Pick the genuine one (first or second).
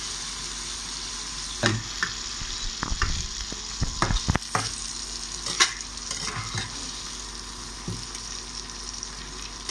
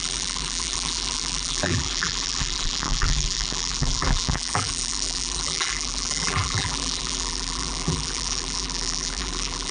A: first